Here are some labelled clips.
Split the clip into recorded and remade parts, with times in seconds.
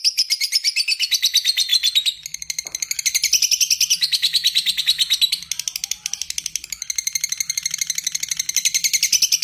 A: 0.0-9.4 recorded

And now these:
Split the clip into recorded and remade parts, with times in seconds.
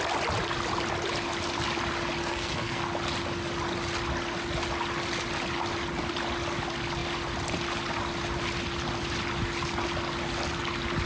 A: 0.0-2.2 recorded; 2.2-2.8 remade; 2.8-11.1 recorded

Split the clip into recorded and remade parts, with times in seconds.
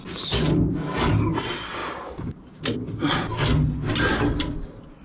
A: 0.0-1.8 recorded; 1.8-2.6 remade; 2.6-5.0 recorded